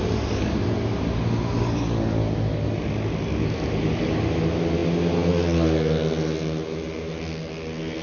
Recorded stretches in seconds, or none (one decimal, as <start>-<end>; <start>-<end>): 0.0-8.0